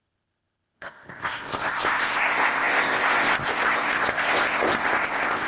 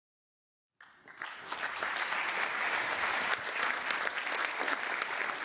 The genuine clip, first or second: second